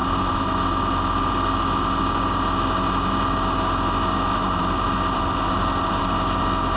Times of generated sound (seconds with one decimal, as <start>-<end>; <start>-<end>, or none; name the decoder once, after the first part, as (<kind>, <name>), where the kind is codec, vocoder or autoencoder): 0.0-0.5 (vocoder, BigVGAN v2); 4.3-6.0